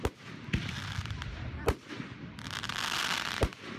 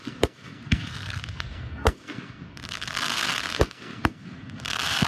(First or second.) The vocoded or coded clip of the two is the second